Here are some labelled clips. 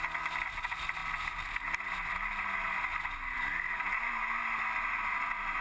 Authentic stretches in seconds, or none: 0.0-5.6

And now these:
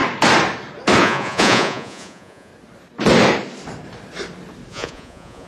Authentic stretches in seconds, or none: 0.0-1.0; 2.5-4.7

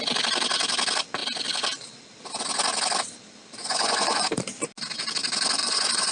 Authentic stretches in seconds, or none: 0.0-3.6; 4.3-5.6

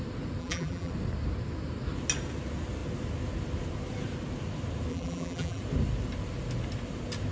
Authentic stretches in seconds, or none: 0.0-0.4; 0.9-4.9; 5.6-7.3

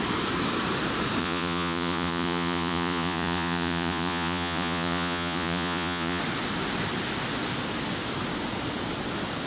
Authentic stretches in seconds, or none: 0.0-1.2; 6.2-9.5